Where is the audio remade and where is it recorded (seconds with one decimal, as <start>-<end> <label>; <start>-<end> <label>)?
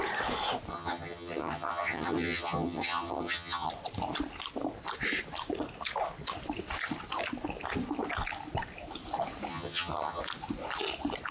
0.0-0.7 recorded; 0.7-3.7 remade; 3.7-9.5 recorded; 9.5-10.2 remade; 10.2-11.3 recorded